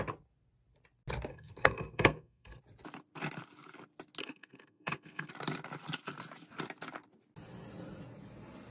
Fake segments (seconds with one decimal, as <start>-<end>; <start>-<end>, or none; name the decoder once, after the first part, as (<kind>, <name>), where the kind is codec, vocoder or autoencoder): 1.3-2.6 (codec, SNAC); 4.2-5.3